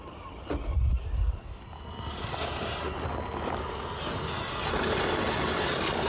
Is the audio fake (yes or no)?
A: no